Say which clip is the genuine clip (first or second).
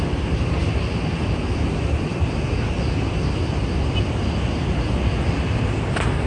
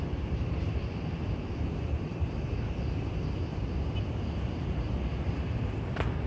first